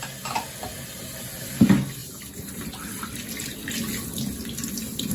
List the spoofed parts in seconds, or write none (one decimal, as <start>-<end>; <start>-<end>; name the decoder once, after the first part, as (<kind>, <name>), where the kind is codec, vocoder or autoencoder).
none